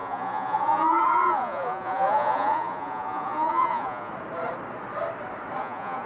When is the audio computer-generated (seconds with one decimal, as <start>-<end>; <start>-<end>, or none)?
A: 0.0-4.1; 5.6-6.1